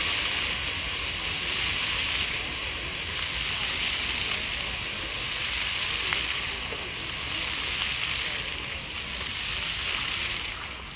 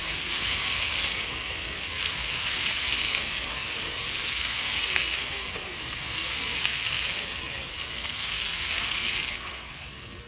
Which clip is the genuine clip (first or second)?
first